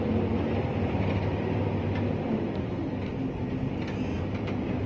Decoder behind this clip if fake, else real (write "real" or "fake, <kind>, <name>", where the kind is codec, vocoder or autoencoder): real